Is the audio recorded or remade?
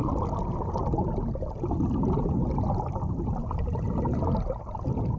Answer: recorded